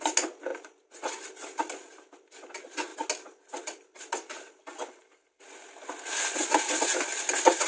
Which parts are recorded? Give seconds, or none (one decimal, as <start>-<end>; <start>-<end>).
0.0-7.7